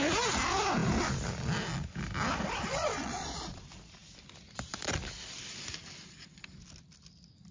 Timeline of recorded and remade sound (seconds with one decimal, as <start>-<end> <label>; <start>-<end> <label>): 0.0-2.7 recorded; 2.7-3.6 remade; 3.6-7.5 recorded